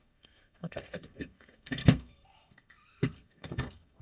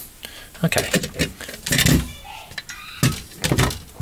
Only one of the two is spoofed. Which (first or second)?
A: first